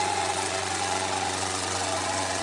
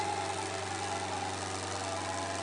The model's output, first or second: first